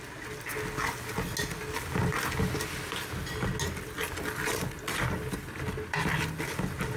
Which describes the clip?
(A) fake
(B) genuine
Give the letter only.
B